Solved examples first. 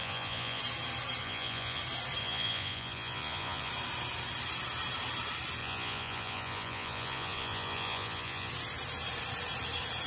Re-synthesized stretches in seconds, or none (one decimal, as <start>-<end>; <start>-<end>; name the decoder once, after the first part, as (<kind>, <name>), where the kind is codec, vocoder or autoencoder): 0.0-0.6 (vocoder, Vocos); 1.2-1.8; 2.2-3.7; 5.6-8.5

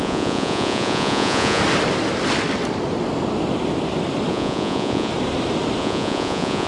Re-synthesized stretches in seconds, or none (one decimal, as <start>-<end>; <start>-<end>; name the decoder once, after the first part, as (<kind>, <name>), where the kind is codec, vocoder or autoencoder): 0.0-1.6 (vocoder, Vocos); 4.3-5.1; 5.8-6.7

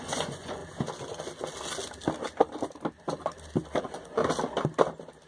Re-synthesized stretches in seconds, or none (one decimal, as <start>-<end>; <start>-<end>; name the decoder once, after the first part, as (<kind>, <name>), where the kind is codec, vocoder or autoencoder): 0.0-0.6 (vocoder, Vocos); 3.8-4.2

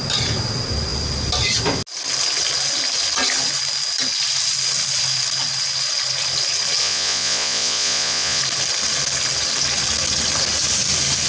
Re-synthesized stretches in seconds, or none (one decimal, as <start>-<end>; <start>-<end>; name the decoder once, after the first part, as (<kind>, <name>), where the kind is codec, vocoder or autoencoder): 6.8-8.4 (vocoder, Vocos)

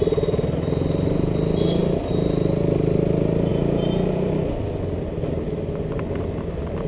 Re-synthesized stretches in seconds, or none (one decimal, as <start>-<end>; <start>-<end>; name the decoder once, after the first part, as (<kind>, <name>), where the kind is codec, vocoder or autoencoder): none

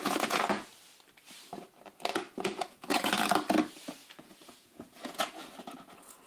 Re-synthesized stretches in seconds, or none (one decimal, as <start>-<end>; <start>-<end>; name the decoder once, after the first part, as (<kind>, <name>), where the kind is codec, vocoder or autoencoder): 0.0-0.7 (vocoder, Vocos); 2.1-3.1; 4.0-6.3

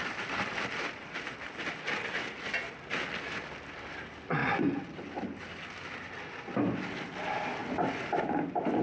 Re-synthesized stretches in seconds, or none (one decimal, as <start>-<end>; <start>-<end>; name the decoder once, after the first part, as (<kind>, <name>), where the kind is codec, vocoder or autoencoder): none

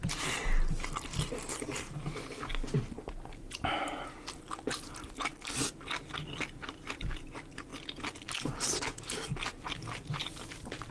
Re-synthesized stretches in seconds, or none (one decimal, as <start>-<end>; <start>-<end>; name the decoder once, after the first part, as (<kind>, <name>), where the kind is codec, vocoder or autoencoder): none